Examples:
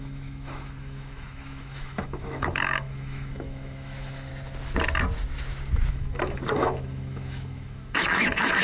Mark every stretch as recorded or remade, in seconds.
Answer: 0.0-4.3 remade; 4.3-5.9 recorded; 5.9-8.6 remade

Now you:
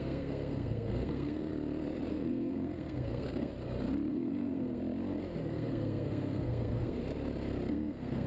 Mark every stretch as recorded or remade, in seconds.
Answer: 0.0-1.5 remade; 1.5-2.1 recorded; 2.1-3.5 remade; 3.5-4.1 recorded; 4.1-4.8 remade; 4.8-5.5 recorded; 5.5-7.0 remade; 7.0-7.7 recorded; 7.7-8.3 remade

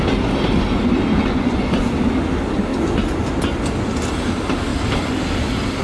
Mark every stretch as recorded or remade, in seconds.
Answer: 0.0-1.2 recorded; 1.2-1.8 remade; 1.8-5.8 recorded

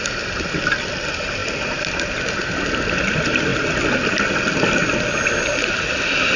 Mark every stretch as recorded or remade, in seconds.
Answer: 0.0-6.4 recorded

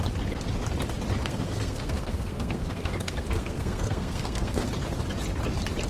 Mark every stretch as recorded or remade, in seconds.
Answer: 0.0-1.2 recorded; 1.2-4.7 remade; 4.7-5.9 recorded

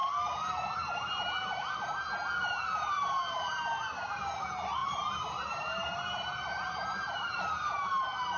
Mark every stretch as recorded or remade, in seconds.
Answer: 0.0-8.4 recorded